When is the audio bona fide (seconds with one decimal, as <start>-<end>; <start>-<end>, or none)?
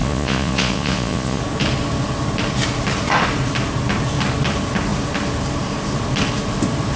1.4-7.0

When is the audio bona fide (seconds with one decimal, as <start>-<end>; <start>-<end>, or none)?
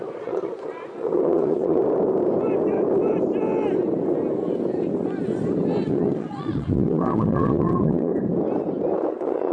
1.8-5.9; 8.1-9.1